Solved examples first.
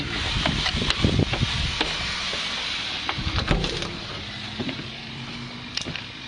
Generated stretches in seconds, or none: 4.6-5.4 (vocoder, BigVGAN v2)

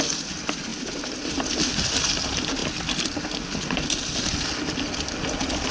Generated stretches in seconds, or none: none